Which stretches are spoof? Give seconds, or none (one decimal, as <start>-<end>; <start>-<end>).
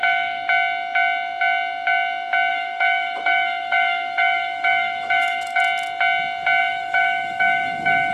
2.5-5.6; 6.6-8.1